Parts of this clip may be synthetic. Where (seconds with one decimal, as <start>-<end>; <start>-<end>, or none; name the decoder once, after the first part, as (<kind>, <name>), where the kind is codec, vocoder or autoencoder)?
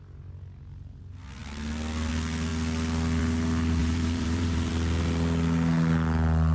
3.8-4.7 (vocoder, BigVGAN v2)